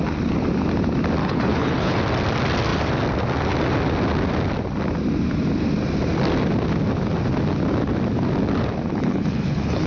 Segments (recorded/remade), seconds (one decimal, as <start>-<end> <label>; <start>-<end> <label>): 0.0-1.2 recorded; 1.2-2.0 remade; 2.0-8.9 recorded; 8.9-9.9 remade